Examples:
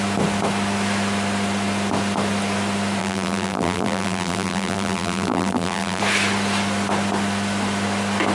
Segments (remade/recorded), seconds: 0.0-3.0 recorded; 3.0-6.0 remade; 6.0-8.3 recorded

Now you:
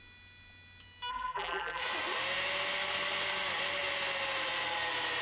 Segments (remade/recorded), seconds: 0.0-1.1 recorded; 1.1-1.8 remade; 1.8-5.2 recorded

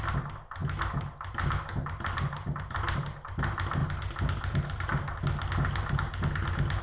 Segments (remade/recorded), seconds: 0.0-6.8 recorded

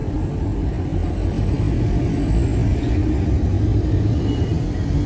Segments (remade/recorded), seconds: 0.0-5.1 recorded

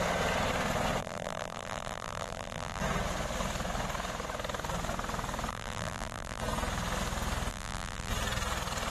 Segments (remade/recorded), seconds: 0.0-1.0 recorded; 1.0-2.8 remade; 2.8-5.5 recorded; 5.5-6.4 remade; 6.4-7.5 recorded; 7.5-8.1 remade; 8.1-8.9 recorded

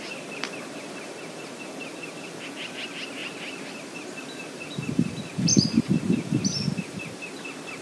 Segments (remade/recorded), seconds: 0.0-3.2 recorded; 3.2-4.9 remade; 4.9-5.5 recorded; 5.5-6.0 remade; 6.0-7.8 recorded